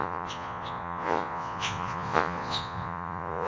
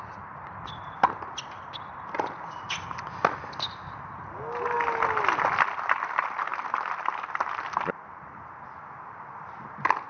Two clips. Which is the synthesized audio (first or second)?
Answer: first